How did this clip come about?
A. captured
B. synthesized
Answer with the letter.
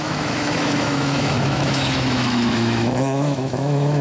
B